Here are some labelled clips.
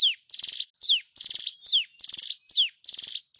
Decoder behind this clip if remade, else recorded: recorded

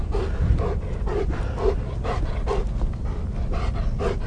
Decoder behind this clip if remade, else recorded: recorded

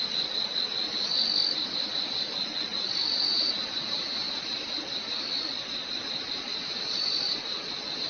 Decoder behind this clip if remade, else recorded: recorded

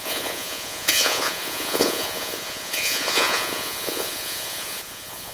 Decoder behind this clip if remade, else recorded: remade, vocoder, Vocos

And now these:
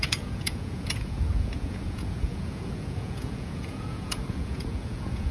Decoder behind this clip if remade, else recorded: remade, vocoder, Vocos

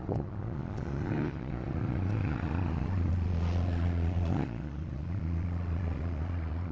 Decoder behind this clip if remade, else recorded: remade, vocoder, Vocos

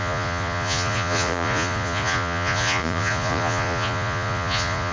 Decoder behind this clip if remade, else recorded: remade, vocoder, Vocos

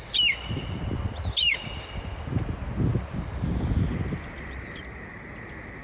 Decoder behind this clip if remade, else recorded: recorded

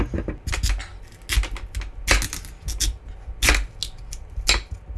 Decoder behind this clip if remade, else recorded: recorded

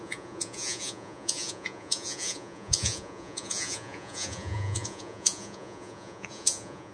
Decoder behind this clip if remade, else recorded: remade, vocoder, Vocos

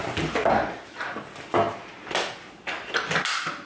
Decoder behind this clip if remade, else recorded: recorded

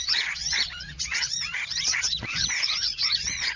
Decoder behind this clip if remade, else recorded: remade, vocoder, Vocos